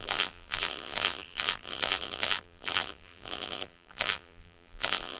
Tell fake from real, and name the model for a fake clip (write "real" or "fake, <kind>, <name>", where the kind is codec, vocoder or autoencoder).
fake, vocoder, BigVGAN v2